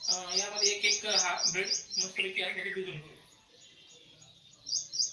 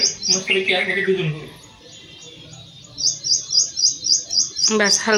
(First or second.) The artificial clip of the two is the first